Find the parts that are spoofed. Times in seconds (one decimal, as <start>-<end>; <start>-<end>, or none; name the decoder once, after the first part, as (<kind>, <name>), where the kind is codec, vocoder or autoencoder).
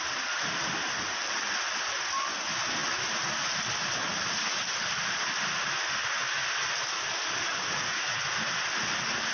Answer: none